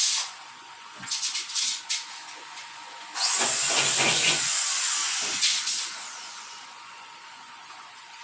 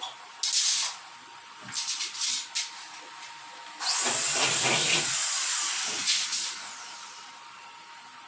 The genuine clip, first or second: second